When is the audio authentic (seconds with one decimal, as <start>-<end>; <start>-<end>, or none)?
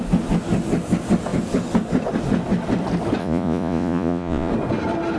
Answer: 0.0-3.2; 4.5-5.2